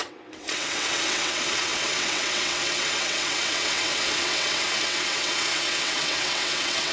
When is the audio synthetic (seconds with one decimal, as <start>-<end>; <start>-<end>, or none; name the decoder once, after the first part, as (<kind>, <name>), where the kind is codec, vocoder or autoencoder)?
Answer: 0.0-6.9 (vocoder, WaveNeXt)